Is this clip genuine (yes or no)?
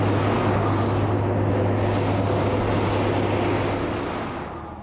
yes